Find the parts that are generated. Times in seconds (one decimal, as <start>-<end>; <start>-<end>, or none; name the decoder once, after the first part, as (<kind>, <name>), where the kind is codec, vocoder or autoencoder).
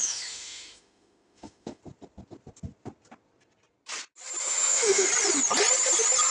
0.0-1.8 (autoencoder, DAC-VAE); 4.4-5.1